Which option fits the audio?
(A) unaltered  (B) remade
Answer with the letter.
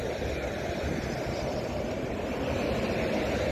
B